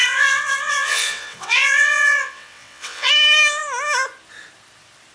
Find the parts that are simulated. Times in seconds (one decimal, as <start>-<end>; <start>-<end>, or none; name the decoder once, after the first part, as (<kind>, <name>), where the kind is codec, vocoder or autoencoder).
0.0-3.1 (vocoder, WaveNeXt)